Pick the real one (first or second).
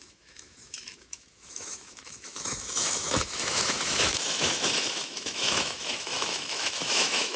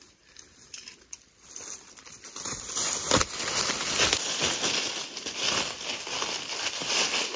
second